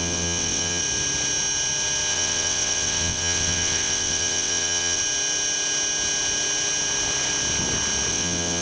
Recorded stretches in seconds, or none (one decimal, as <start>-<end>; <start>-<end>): 0.8-2.1; 5.0-8.1